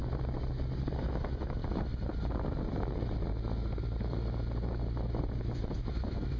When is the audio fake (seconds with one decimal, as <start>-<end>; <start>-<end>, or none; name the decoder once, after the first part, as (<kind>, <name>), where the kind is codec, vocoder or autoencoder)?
0.9-1.6 (autoencoder, DAC-VAE); 5.4-6.4